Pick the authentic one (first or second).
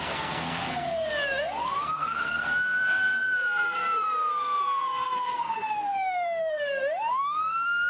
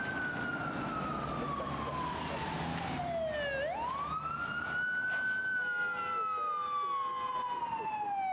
second